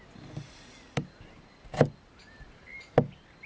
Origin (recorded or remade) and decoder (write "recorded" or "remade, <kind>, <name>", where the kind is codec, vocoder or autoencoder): recorded